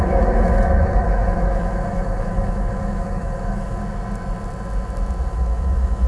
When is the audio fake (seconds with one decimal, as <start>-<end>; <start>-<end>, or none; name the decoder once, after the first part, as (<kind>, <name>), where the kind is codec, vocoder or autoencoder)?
0.0-3.8 (autoencoder, DAC-VAE); 5.3-6.1